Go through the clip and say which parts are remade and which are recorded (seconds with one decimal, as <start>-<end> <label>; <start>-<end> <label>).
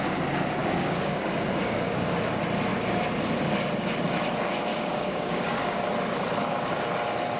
0.0-0.6 recorded; 0.6-2.1 remade; 2.1-4.7 recorded; 4.7-5.8 remade; 5.8-7.4 recorded